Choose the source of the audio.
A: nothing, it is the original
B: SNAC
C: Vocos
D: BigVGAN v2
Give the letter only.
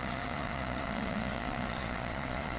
C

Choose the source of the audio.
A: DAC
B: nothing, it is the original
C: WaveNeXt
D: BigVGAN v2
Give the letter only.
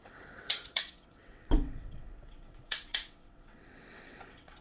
C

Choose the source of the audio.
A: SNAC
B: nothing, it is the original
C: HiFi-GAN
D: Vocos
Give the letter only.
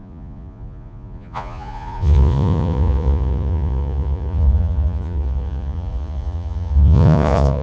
D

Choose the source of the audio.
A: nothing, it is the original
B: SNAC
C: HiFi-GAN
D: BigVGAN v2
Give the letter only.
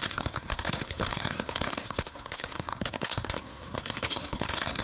B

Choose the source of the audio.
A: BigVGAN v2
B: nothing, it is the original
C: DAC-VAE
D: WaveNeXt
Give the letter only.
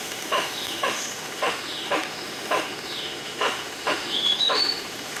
C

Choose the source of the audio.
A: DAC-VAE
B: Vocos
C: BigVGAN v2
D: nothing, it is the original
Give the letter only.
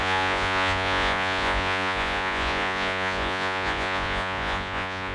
B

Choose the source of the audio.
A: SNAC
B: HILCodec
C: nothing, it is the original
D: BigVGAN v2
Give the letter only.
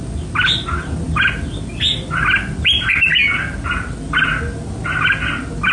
C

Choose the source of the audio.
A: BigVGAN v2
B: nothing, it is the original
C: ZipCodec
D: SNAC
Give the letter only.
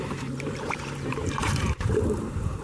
A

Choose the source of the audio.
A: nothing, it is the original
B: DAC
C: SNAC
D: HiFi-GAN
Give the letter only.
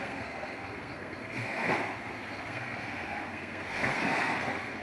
C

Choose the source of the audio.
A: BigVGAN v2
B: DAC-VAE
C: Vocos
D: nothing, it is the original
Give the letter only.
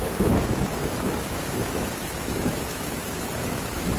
B